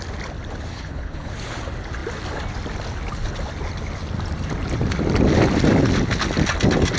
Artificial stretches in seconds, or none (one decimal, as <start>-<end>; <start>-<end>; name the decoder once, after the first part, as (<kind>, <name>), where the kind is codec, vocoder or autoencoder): 0.7-1.3 (codec, HILCodec)